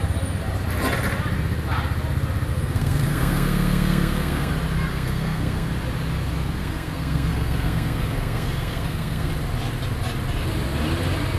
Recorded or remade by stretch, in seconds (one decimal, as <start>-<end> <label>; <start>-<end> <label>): 0.0-2.5 recorded; 2.5-4.5 remade; 4.5-4.9 recorded; 4.9-5.7 remade; 5.7-6.6 recorded; 6.6-9.3 remade; 9.3-11.4 recorded